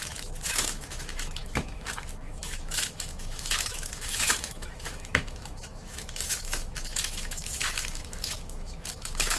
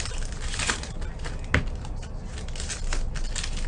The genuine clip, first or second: second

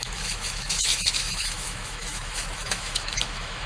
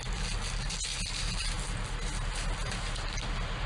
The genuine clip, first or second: second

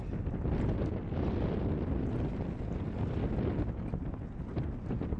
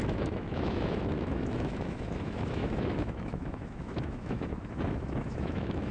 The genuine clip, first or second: first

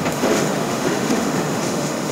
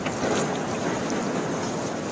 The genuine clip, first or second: second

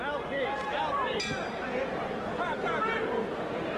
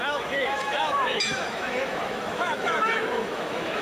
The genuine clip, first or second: first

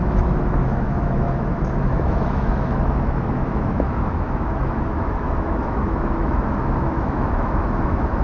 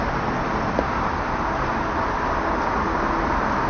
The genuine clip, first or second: second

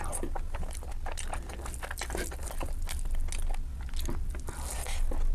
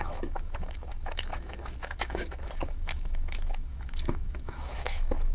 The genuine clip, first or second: first